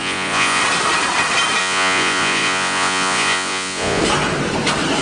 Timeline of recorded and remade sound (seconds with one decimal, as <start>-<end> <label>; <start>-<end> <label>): 0.0-0.6 remade; 0.6-1.6 recorded; 1.6-4.0 remade; 4.0-5.0 recorded